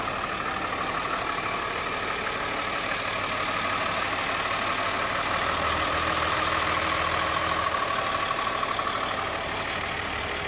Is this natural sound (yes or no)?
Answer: yes